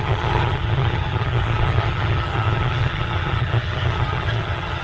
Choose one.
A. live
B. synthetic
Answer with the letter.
B